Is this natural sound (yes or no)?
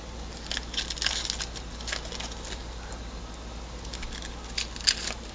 yes